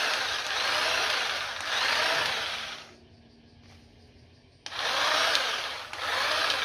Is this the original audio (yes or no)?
yes